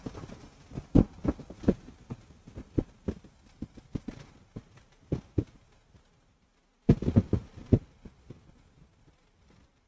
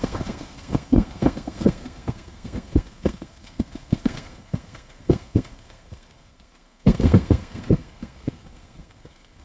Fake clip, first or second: second